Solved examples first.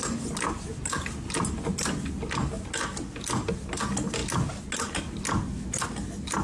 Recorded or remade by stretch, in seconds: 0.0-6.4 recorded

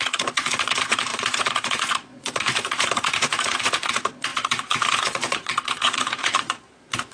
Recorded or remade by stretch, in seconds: 0.0-7.1 remade

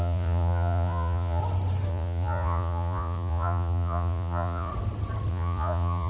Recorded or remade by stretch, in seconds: 0.0-1.4 remade; 1.4-1.9 recorded; 1.9-4.7 remade; 4.7-5.3 recorded; 5.3-6.1 remade

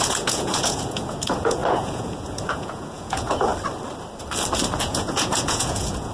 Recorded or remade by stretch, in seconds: 0.0-3.5 remade; 3.5-4.8 recorded; 4.8-6.1 remade

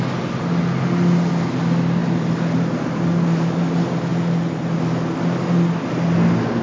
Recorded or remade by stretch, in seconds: 0.0-6.6 recorded

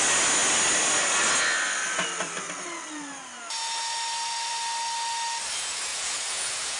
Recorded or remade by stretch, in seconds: 0.0-5.9 recorded; 5.9-6.8 remade